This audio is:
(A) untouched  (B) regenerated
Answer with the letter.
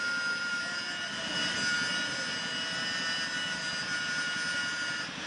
A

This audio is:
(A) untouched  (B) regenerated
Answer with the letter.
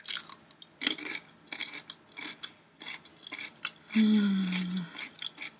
A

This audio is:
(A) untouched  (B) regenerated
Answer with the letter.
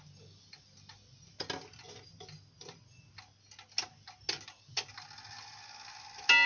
A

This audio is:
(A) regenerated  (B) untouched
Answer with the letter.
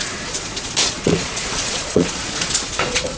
A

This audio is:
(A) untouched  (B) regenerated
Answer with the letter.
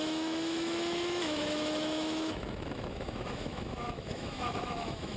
B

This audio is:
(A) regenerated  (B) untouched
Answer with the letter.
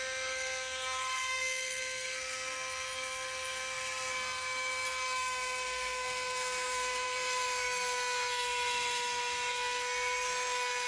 A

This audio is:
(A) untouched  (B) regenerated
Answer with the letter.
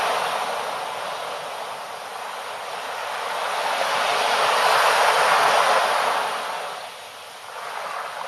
A